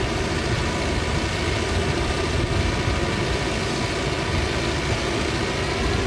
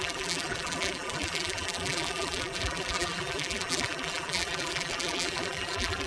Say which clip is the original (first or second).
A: first